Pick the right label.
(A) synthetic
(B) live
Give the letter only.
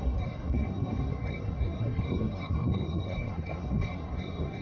A